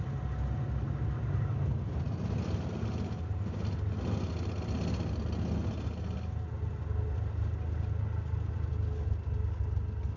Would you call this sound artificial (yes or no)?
no